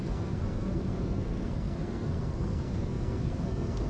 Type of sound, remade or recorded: remade